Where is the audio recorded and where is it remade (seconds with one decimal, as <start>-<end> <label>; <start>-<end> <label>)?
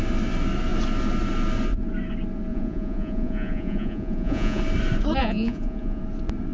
0.0-2.5 recorded; 2.5-4.6 remade; 4.6-5.2 recorded; 5.2-6.0 remade; 6.0-6.5 recorded